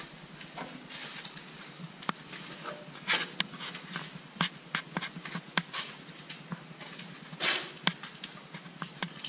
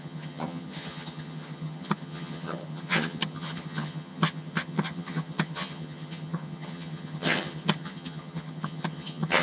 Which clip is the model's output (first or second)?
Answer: second